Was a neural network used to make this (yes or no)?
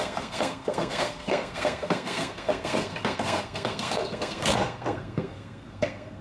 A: yes